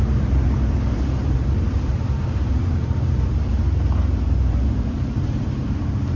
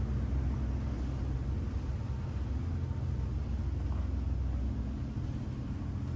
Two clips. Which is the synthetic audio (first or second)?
first